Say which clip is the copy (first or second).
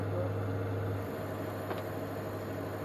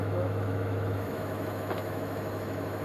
second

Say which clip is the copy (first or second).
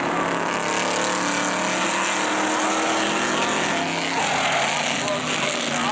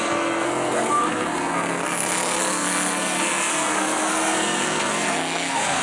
second